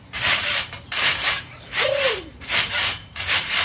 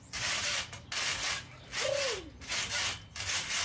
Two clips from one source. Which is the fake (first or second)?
first